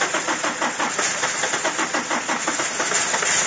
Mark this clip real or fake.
real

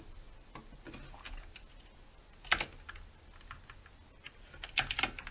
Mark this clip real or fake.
real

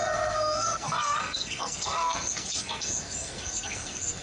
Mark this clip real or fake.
fake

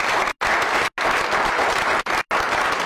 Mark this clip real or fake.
real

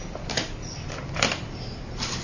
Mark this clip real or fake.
real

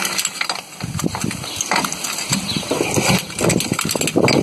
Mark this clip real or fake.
real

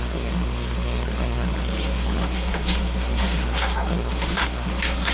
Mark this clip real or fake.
fake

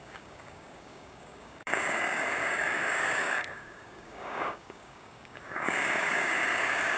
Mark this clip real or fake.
fake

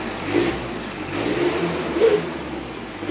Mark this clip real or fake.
real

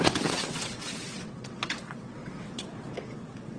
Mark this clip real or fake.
fake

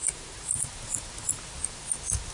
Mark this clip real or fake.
real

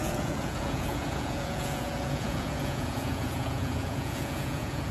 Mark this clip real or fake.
fake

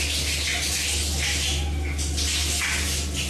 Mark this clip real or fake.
real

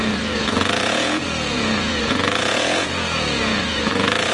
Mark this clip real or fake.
fake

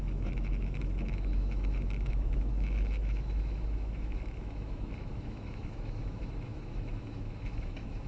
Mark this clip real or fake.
fake